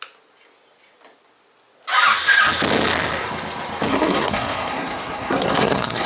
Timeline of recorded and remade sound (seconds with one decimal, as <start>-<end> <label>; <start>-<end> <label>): 0.0-3.9 recorded; 3.9-6.1 remade